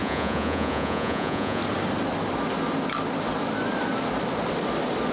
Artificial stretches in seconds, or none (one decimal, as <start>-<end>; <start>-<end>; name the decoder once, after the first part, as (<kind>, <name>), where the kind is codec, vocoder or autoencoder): 0.0-1.6 (vocoder, Vocos)